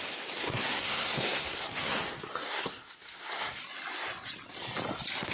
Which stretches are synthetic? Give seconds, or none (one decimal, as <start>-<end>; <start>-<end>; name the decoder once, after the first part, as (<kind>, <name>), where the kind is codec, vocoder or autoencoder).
0.4-3.6 (codec, SNAC)